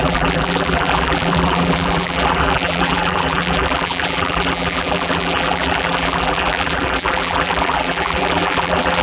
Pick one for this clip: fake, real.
fake